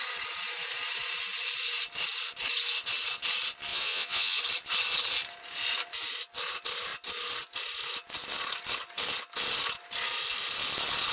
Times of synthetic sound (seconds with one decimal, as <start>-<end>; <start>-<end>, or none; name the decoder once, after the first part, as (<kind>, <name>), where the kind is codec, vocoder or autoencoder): 3.7-4.4 (vocoder, Vocos)